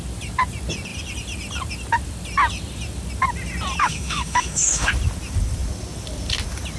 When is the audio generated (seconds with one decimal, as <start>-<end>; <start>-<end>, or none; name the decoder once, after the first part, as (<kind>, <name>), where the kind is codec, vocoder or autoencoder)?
3.8-4.9 (autoencoder, DAC-VAE)

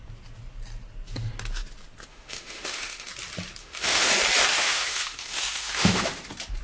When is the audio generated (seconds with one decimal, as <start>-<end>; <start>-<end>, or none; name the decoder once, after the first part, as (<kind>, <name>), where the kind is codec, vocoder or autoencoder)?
2.1-3.1 (autoencoder, DAC-VAE); 3.6-4.1; 4.5-6.1

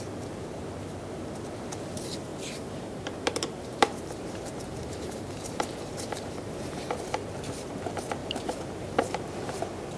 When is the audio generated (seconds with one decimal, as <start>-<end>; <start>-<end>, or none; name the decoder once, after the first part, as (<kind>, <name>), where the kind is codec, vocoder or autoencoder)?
2.3-7.0 (vocoder, BigVGAN v2); 8.2-10.0

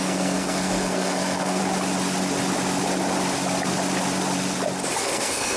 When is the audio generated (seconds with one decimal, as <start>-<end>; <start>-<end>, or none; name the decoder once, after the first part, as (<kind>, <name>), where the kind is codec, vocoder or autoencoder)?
0.0-1.6 (codec, SNAC); 5.0-5.6

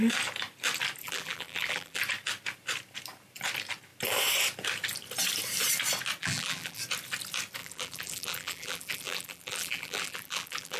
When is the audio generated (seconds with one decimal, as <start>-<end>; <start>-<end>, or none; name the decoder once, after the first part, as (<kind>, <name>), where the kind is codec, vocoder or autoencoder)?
1.0-2.0 (vocoder, BigVGAN v2); 6.2-6.8; 7.6-10.8

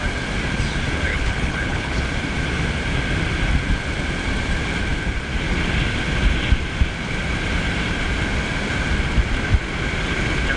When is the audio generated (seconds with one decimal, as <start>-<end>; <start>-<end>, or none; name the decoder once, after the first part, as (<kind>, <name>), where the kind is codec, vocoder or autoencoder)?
1.1-2.0 (codec, HILCodec)